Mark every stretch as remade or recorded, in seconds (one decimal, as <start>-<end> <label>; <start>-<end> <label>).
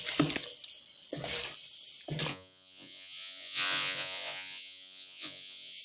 0.0-2.3 recorded; 2.3-5.8 remade